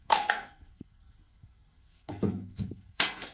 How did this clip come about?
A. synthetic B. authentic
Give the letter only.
A